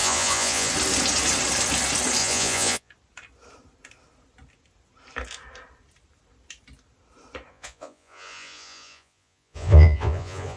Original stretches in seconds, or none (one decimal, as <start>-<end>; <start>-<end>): 0.7-2.2; 2.9-7.5